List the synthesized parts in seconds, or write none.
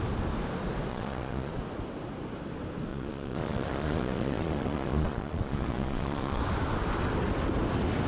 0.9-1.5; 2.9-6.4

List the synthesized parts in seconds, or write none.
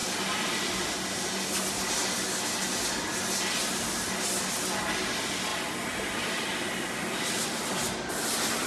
none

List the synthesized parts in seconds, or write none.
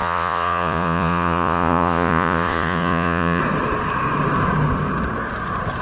0.0-3.4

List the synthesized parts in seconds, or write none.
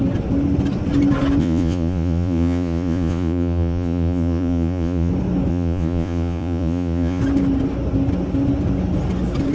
1.4-5.1; 5.5-7.2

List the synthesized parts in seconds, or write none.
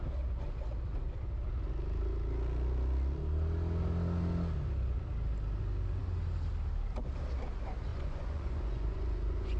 7.9-9.6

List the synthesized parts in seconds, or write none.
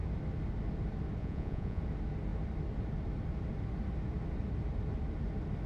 1.2-1.8